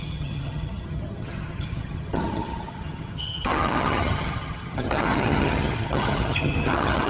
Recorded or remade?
remade